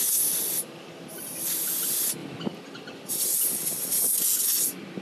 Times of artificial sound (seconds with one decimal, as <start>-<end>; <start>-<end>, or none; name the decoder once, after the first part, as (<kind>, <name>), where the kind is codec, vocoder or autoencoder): none